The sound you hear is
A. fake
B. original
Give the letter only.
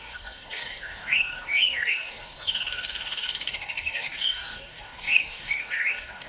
A